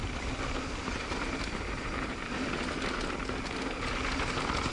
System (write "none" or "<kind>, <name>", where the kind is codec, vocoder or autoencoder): none